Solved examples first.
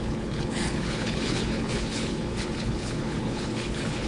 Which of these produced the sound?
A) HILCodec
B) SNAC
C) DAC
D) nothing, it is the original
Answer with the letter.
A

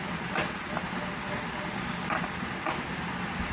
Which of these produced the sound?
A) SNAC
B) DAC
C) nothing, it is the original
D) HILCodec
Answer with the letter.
C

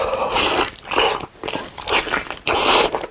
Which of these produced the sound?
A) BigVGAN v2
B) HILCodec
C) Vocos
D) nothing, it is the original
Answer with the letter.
D